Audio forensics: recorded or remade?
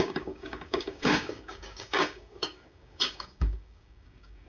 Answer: remade